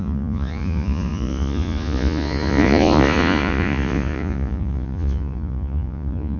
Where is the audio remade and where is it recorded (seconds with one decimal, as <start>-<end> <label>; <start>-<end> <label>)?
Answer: 0.0-6.4 remade